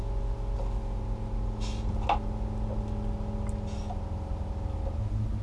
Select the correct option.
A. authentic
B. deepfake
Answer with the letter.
A